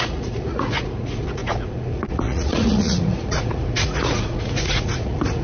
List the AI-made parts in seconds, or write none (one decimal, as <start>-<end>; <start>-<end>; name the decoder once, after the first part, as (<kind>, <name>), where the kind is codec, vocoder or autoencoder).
0.0-5.4 (vocoder, Vocos)

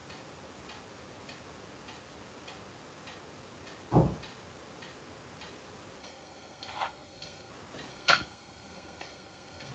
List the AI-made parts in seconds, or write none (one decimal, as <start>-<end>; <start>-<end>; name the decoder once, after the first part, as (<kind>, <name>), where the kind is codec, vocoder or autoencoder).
6.0-7.5 (codec, SNAC); 7.9-9.7

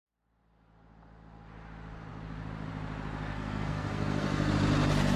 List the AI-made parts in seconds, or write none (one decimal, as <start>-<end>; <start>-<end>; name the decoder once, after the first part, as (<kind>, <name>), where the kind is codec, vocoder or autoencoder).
3.3-4.5 (codec, SNAC)

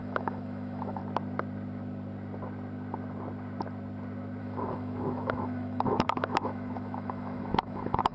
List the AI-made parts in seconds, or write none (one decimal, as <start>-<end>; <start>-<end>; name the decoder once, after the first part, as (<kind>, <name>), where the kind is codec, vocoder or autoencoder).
0.0-1.0 (autoencoder, DAC-VAE); 4.4-8.1

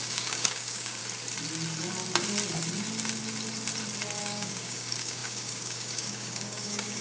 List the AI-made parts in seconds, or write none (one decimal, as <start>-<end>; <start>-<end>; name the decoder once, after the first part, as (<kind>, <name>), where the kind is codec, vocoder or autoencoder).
0.0-1.0 (codec, DAC); 4.2-7.0

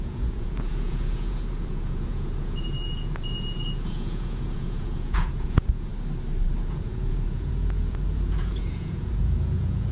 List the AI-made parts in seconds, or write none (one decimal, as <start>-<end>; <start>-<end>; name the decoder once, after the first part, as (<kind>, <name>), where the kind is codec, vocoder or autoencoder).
0.0-5.9 (vocoder, Vocos); 6.6-9.9

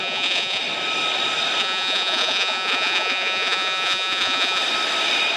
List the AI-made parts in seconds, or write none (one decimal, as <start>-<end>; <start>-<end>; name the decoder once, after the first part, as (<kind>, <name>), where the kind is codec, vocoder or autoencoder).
0.0-0.6 (vocoder, Vocos); 1.6-4.6

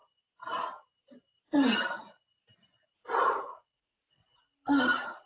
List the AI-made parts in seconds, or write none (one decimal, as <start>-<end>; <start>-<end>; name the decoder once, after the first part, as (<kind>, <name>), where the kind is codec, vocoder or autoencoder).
3.2-5.3 (vocoder, Vocos)